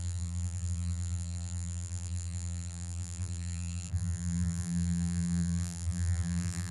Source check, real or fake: fake